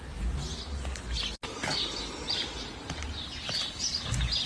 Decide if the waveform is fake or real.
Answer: real